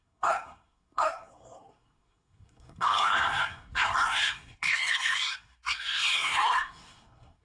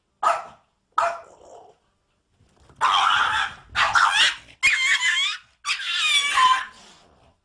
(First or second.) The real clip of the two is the second